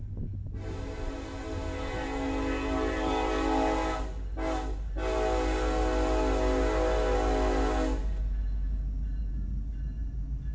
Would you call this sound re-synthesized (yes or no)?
no